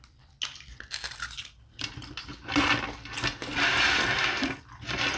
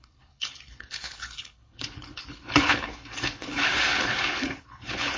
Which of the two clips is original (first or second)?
first